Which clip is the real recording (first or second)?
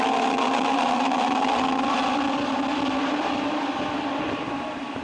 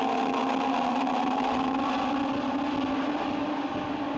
second